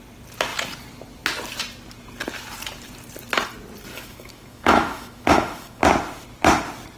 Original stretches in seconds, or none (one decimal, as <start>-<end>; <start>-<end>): 0.0-3.9; 5.8-7.0